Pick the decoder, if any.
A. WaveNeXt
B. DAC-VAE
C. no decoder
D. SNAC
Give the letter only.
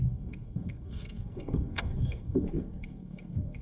D